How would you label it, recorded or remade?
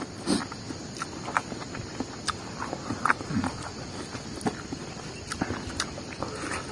recorded